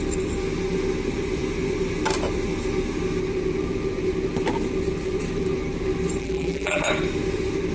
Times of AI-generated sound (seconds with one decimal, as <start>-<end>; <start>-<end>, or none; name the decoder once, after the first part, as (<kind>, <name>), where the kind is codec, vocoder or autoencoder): 6.2-6.8 (vocoder, BigVGAN v2)